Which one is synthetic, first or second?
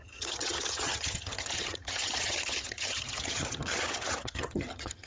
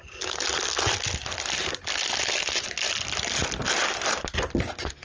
first